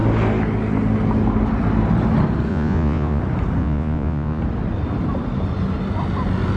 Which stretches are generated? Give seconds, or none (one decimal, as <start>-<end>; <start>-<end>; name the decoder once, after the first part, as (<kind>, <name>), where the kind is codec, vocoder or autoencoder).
2.5-3.2 (vocoder, Vocos); 3.6-4.4